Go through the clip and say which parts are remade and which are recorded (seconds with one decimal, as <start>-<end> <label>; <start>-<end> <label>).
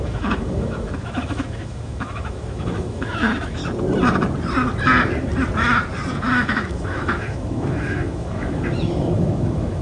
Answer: 0.0-3.6 remade; 3.6-6.2 recorded; 6.2-9.8 remade